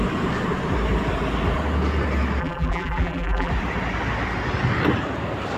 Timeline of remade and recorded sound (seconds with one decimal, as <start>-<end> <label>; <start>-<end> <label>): 0.0-2.4 recorded; 2.4-3.5 remade; 3.5-5.6 recorded